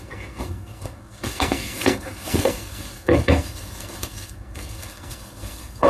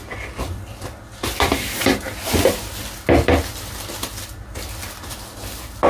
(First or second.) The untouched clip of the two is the second